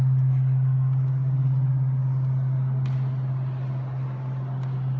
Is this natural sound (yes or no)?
yes